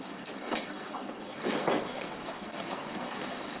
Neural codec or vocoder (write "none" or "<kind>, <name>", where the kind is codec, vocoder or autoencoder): codec, SNAC